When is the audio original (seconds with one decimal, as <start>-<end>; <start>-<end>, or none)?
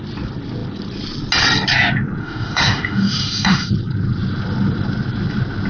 0.0-2.2; 3.7-5.7